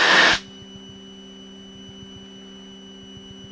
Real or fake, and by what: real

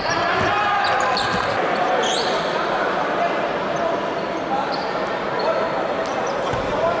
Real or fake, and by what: real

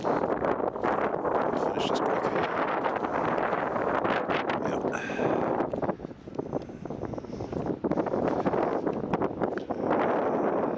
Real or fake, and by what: real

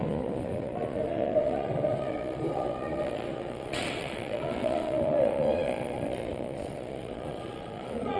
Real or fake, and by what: fake, vocoder, Vocos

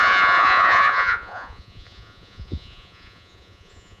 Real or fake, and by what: fake, vocoder, Vocos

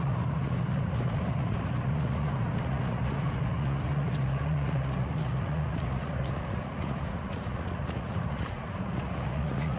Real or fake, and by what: fake, vocoder, Vocos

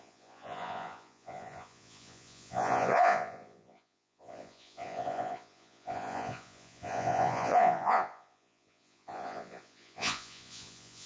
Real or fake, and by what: fake, vocoder, Vocos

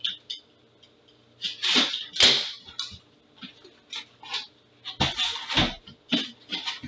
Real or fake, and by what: real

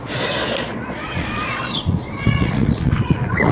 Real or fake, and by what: fake, vocoder, Vocos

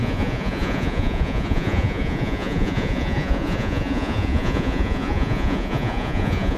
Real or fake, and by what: fake, vocoder, Vocos